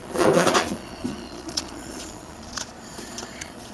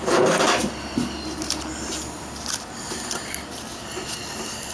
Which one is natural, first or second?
second